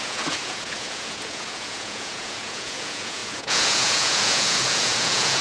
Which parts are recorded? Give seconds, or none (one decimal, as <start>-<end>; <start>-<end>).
none